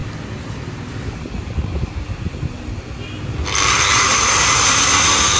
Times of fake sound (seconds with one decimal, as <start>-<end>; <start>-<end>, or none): none